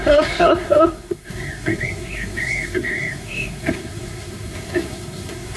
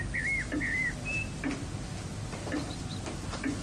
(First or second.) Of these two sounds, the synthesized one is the first